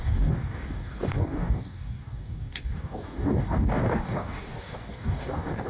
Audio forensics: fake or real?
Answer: fake